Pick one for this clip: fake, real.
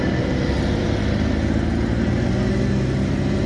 real